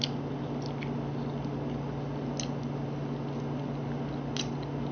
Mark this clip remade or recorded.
recorded